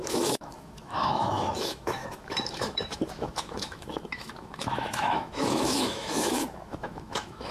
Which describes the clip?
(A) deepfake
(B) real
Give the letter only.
A